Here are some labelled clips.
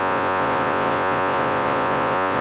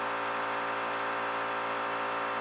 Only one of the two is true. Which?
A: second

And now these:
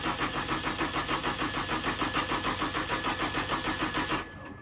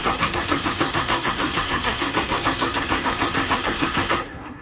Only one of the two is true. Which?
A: first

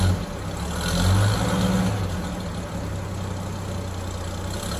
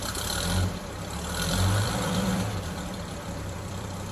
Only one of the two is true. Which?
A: first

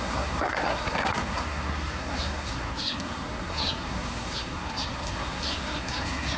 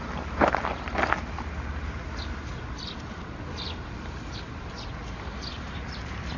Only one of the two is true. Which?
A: second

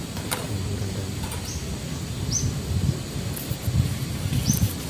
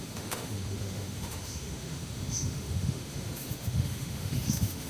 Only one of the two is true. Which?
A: first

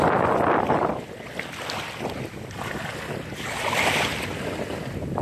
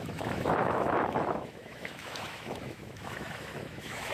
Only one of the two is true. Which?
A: first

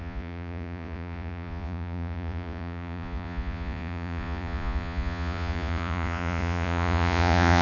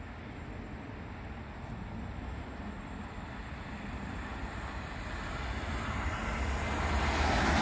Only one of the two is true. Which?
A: second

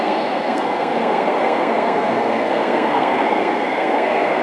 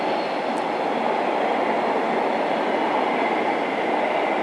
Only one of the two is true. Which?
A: second